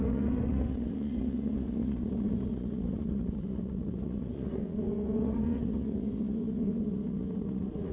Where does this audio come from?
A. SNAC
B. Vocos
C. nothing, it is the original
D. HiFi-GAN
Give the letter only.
B